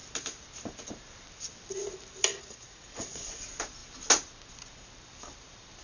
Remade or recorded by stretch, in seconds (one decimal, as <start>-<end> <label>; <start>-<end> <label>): 0.0-2.3 recorded; 2.3-3.4 remade; 3.4-5.8 recorded